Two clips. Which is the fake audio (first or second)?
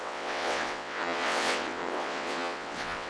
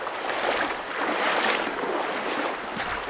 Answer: first